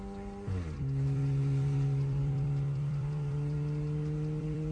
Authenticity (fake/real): fake